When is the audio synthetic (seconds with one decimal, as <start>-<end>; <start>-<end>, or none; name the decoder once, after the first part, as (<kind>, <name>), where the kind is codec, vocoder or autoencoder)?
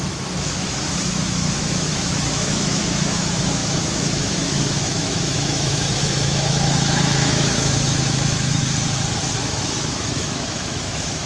0.0-8.6 (autoencoder, DAC-VAE); 9.4-11.3